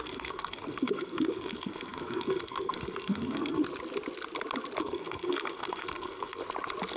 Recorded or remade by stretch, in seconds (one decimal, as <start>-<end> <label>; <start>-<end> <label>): 0.0-3.6 remade; 3.6-4.8 recorded; 4.8-6.4 remade; 6.4-7.0 recorded

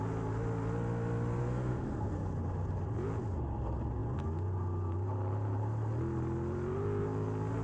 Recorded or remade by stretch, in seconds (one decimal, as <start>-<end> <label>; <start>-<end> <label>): 0.0-1.4 recorded; 1.4-2.1 remade; 2.1-7.6 recorded